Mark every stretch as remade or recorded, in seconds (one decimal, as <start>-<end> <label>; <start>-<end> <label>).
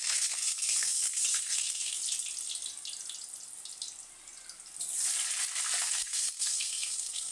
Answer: 0.0-2.0 remade; 2.0-5.8 recorded; 5.8-7.3 remade